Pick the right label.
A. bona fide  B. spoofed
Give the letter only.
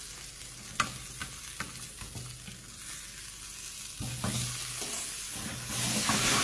A